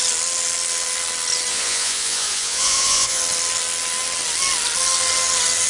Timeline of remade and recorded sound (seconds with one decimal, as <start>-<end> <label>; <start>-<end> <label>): 0.0-1.5 recorded; 1.5-3.2 remade; 3.2-5.7 recorded